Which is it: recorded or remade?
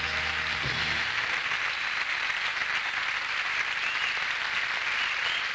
recorded